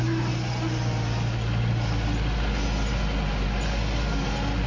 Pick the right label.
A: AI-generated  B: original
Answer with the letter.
B